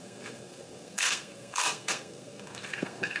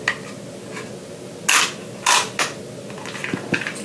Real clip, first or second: second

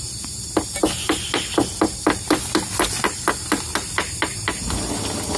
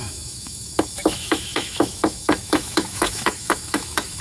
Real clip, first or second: first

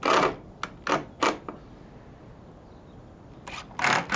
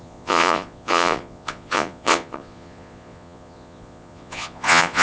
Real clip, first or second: first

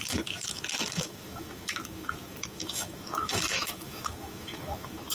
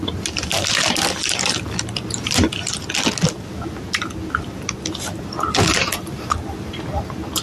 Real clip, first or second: second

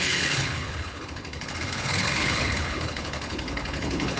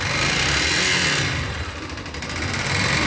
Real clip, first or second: second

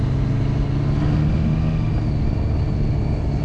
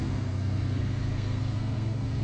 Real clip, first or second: first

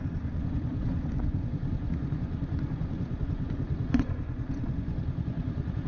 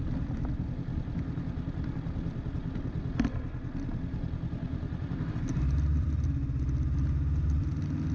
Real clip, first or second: second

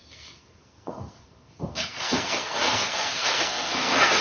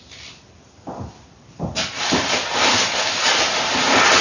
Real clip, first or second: second